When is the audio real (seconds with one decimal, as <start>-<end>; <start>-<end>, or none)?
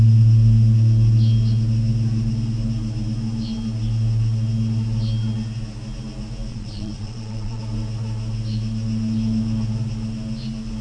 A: 0.0-6.5; 7.6-10.8